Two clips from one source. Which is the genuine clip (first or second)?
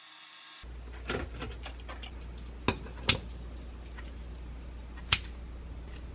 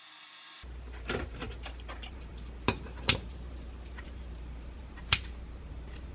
first